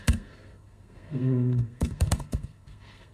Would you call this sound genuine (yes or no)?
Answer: no